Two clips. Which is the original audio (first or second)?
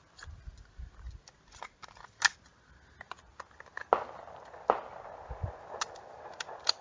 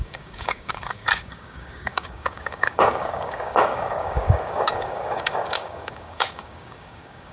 first